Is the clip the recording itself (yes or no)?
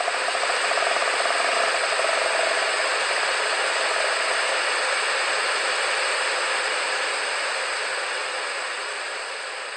yes